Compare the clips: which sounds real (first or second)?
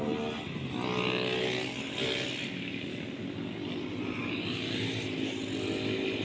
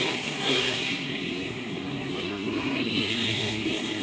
first